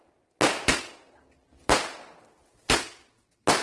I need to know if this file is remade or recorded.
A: recorded